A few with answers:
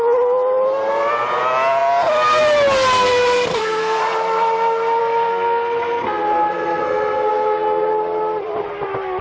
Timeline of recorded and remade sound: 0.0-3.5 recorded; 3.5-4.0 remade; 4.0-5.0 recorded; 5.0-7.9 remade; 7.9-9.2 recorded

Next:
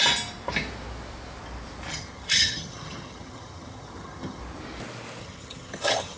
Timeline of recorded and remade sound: 0.0-1.9 recorded; 1.9-4.4 remade; 4.4-5.2 recorded; 5.2-6.2 remade

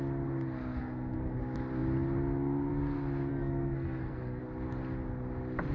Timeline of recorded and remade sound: 0.0-0.8 recorded; 0.8-1.4 remade; 1.4-3.3 recorded; 3.3-4.4 remade; 4.4-5.7 recorded

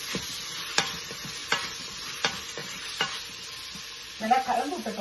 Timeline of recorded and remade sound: 0.0-1.4 recorded; 1.4-2.2 remade; 2.2-2.6 recorded; 2.6-3.2 remade; 3.2-5.0 recorded

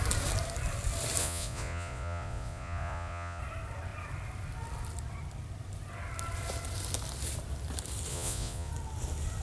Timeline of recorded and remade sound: 0.0-1.2 recorded; 1.2-3.4 remade; 3.4-8.1 recorded; 8.1-8.7 remade; 8.7-9.4 recorded

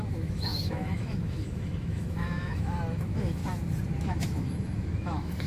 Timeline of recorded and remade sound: 0.0-3.4 remade; 3.4-4.0 recorded; 4.0-5.5 remade